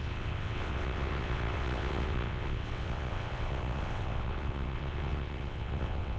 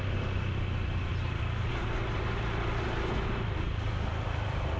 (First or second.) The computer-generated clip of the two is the first